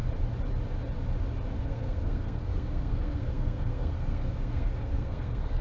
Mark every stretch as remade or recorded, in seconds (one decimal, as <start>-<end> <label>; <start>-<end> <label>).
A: 0.0-1.6 recorded; 1.6-5.6 remade